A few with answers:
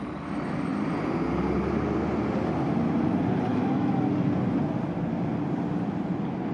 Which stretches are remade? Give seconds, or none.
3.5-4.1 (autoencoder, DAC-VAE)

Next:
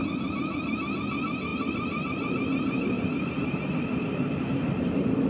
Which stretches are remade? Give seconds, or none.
0.0-0.9 (vocoder, BigVGAN v2); 1.5-4.7

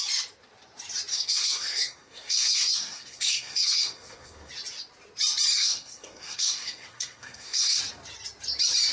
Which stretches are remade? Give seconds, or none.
1.1-4.5 (codec, SNAC); 5.5-7.8

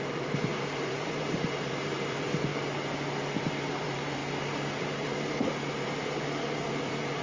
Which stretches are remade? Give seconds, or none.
0.0-2.5 (vocoder, BigVGAN v2); 3.7-4.2; 4.8-7.2

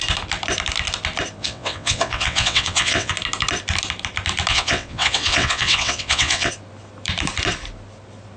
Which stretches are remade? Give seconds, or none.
1.4-3.1 (vocoder, WaveNeXt); 4.5-6.5

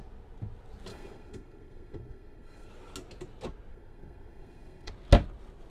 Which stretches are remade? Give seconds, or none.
0.9-2.7 (codec, SNAC); 3.7-4.9